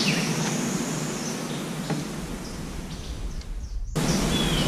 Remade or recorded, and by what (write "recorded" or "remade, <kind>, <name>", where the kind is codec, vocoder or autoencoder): recorded